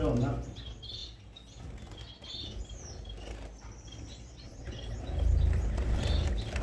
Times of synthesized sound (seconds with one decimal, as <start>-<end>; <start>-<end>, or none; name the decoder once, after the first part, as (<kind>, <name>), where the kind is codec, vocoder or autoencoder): none